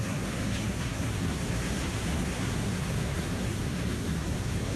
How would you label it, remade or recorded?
remade